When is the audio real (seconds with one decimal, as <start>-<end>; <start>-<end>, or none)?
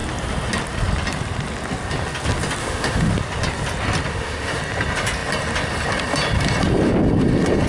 0.0-2.6; 3.1-4.1; 4.6-7.7